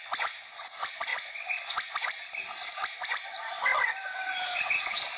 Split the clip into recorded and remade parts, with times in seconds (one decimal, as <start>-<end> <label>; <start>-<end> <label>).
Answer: 0.0-5.2 recorded